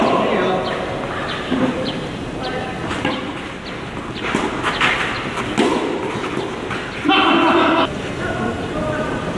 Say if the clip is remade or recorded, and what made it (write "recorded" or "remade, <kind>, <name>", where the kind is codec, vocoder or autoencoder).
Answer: recorded